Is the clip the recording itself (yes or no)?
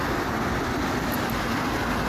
yes